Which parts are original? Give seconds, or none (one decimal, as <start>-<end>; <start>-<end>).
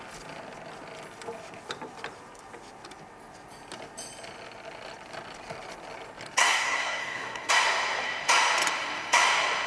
0.0-6.4; 7.5-9.7